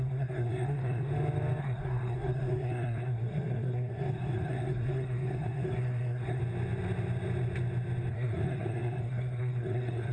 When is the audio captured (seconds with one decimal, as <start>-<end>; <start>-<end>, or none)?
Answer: 1.1-1.6; 6.4-8.1